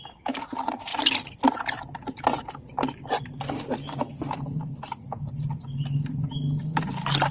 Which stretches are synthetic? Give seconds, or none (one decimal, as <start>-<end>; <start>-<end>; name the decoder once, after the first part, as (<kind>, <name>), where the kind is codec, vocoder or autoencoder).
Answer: none